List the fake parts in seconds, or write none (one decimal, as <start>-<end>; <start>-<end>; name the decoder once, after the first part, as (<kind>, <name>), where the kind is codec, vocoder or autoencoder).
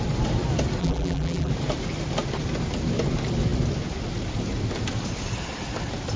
0.8-1.5 (vocoder, BigVGAN v2)